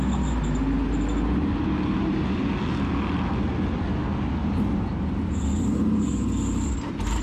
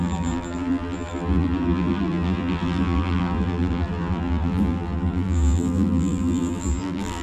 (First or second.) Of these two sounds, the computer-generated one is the second